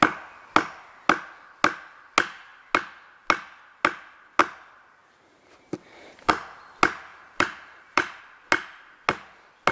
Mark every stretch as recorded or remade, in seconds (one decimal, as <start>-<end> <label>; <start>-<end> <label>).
0.0-5.0 recorded; 5.0-6.3 remade; 6.3-7.1 recorded; 7.1-8.2 remade; 8.2-9.7 recorded